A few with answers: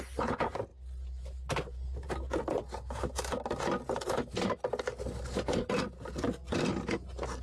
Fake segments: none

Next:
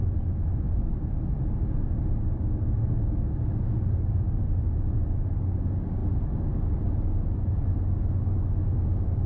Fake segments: none

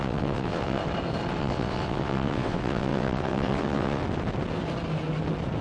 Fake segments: 0.0-0.8 (vocoder, WaveNeXt); 1.4-4.0

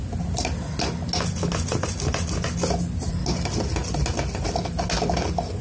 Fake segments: none

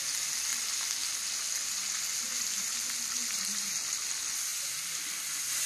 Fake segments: 2.3-3.7 (vocoder, BigVGAN v2)

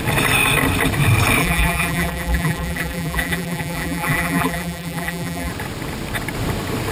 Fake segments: 1.4-5.5 (vocoder, BigVGAN v2)

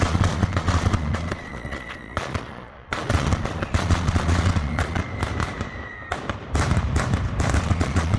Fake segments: 0.0-5.0 (vocoder, Vocos); 7.6-8.2

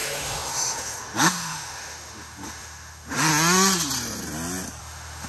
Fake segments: 0.0-3.3 (autoencoder, DAC-VAE); 4.8-5.3